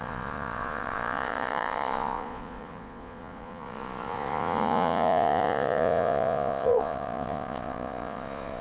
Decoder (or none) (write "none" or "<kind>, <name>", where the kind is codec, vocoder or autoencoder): vocoder, Vocos